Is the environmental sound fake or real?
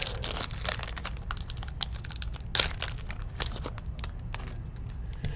real